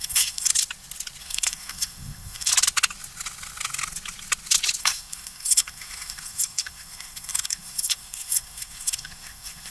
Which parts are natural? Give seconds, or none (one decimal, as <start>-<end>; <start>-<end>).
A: 0.5-1.2; 2.5-4.8